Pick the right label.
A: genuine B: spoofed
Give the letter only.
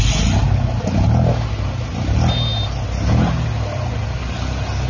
A